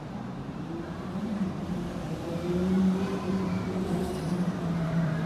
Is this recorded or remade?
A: remade